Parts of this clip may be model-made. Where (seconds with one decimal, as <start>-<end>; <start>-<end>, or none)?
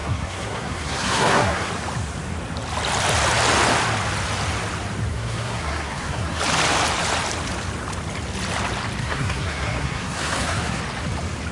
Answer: 0.0-1.7; 5.1-6.4; 9.0-10.8